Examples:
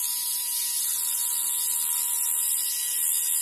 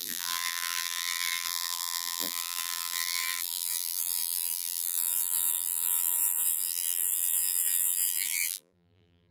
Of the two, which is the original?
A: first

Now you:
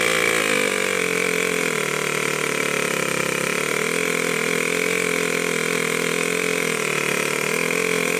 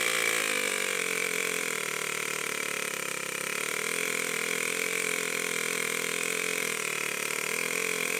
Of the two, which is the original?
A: first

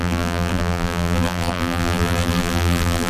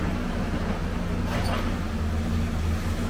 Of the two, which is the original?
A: second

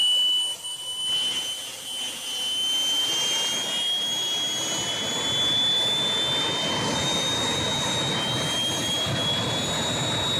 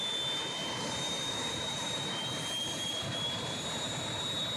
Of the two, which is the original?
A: first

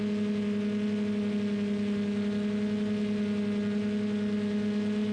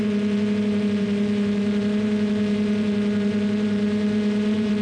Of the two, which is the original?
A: first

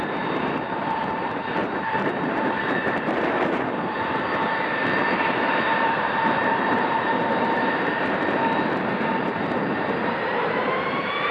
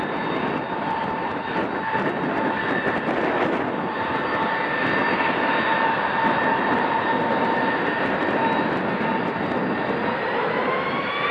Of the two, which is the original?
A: second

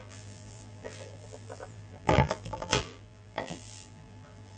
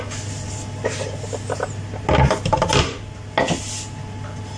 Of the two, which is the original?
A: second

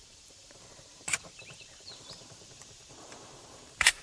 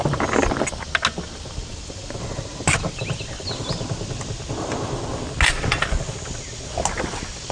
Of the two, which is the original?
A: second